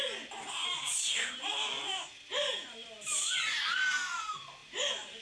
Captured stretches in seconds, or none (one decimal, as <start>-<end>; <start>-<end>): 0.0-5.2